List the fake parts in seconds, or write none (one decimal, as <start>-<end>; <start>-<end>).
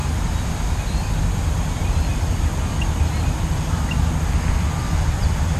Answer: 2.1-5.6